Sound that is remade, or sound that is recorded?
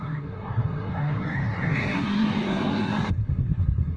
remade